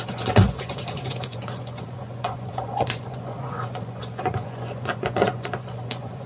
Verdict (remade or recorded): remade